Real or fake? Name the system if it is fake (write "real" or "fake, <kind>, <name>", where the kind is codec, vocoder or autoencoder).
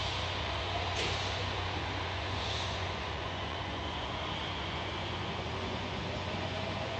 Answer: fake, vocoder, Vocos